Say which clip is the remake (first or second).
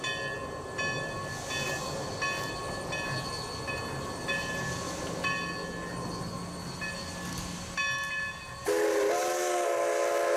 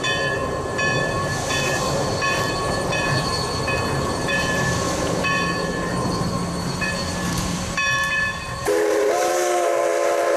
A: second